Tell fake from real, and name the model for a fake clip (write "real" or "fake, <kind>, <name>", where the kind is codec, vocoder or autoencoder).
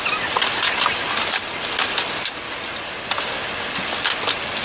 real